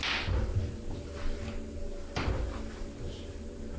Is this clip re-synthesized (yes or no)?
no